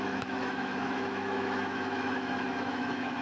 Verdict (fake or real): fake